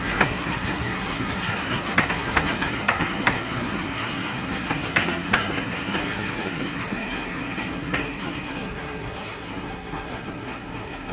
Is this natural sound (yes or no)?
no